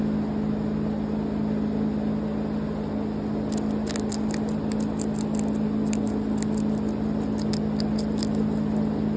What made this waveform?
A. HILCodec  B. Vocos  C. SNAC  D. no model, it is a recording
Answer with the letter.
D